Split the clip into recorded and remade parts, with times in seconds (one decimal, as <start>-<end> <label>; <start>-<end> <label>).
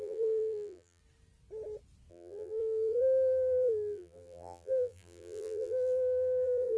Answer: 0.0-1.0 remade; 1.0-2.1 recorded; 2.1-6.8 remade